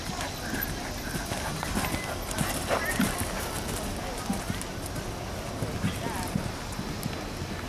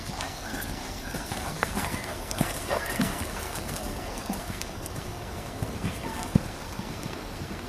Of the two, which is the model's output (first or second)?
second